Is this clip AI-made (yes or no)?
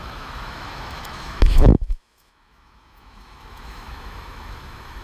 yes